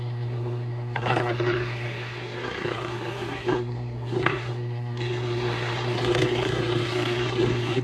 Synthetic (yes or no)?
yes